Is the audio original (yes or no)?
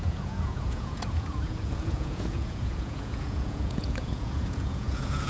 no